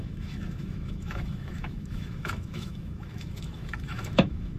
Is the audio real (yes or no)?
no